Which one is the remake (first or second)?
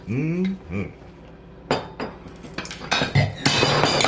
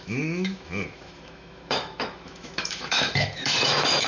second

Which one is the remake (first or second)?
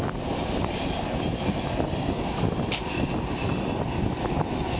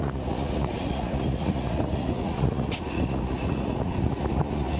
second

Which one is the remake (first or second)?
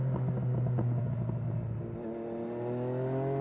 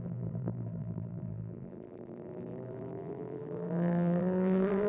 second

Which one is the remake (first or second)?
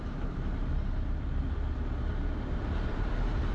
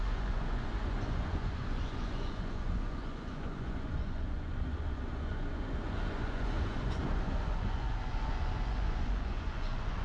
second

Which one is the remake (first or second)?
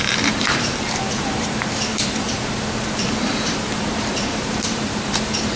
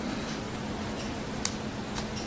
first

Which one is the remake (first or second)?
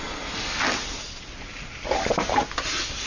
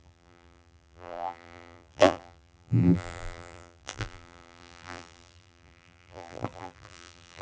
second